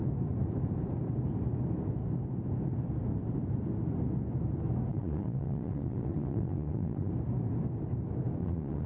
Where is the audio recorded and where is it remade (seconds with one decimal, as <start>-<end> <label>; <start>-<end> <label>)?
0.0-4.9 recorded; 4.9-7.1 remade; 7.1-8.4 recorded; 8.4-8.9 remade